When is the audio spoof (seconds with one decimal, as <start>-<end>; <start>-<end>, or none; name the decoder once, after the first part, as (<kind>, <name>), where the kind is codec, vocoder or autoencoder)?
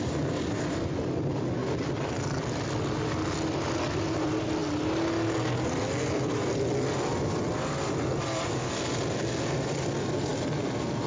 none